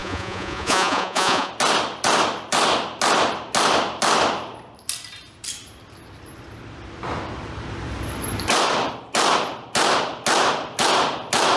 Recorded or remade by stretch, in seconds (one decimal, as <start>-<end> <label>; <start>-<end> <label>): 0.0-1.5 remade; 1.5-11.6 recorded